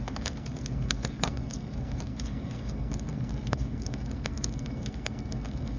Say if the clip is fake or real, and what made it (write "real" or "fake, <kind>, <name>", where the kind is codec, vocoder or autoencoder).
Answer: fake, codec, SNAC